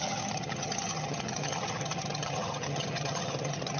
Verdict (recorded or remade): remade